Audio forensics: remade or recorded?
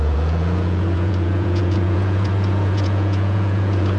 remade